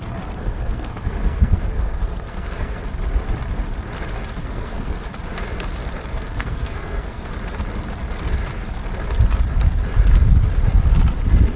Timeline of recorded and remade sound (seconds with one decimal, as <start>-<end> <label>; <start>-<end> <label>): 0.0-0.4 recorded; 0.4-2.8 remade; 2.8-4.4 recorded; 4.4-5.1 remade; 5.1-6.1 recorded; 6.1-7.3 remade; 7.3-11.6 recorded

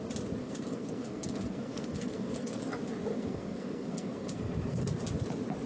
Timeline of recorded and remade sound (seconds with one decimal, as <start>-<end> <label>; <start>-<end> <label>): 0.0-0.4 recorded; 0.4-2.6 remade; 2.6-3.1 recorded; 3.1-4.8 remade; 4.8-5.7 recorded

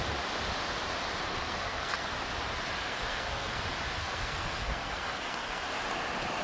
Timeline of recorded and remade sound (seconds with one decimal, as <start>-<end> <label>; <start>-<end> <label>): 0.0-1.3 recorded; 1.3-2.1 remade; 2.1-2.8 recorded; 2.8-3.6 remade; 3.6-4.0 recorded; 4.0-5.6 remade; 5.6-6.4 recorded

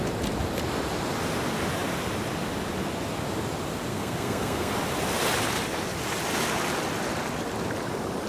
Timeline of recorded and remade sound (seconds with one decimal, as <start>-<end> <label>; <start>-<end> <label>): 0.0-3.9 recorded; 3.9-4.7 remade; 4.7-8.3 recorded

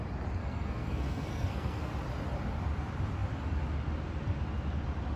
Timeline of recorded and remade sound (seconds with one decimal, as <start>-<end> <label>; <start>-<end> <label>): 0.0-0.4 recorded; 0.4-1.9 remade; 1.9-5.2 recorded

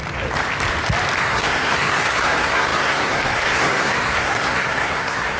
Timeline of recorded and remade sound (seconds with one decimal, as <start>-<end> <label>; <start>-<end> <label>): 0.0-1.2 recorded; 1.2-5.4 remade

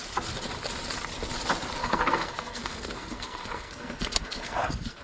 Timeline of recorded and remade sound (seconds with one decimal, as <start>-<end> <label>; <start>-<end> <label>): 0.0-1.8 recorded; 1.8-5.0 remade

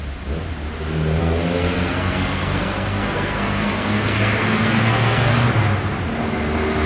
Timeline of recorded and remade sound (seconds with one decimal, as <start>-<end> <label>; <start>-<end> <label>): 0.0-1.2 recorded; 1.2-5.3 remade; 5.3-6.9 recorded